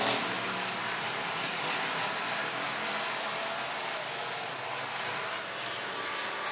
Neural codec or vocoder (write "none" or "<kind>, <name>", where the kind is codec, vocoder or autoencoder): none